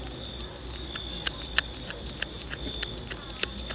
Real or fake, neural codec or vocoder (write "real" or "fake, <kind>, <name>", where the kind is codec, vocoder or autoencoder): real